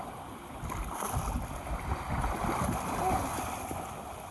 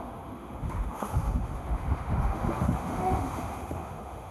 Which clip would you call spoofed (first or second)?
second